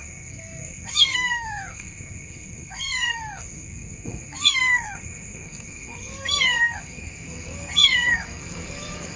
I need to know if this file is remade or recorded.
remade